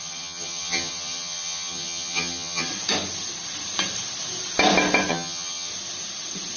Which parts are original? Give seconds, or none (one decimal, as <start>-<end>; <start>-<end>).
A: 2.7-5.1; 5.7-6.6